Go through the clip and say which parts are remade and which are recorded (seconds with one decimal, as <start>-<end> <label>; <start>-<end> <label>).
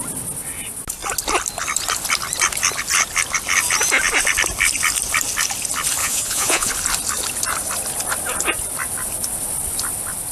0.0-6.0 recorded; 6.0-6.7 remade; 6.7-10.3 recorded